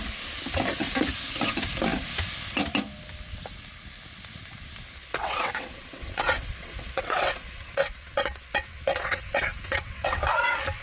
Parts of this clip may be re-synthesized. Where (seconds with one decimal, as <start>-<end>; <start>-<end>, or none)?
5.0-10.2